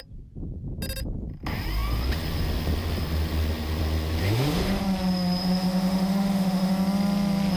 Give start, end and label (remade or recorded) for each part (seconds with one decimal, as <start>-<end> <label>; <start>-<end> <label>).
0.0-4.2 recorded; 4.2-4.8 remade; 4.8-5.4 recorded; 5.4-6.7 remade; 6.7-7.6 recorded